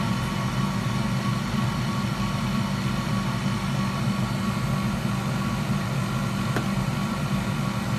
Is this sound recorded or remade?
recorded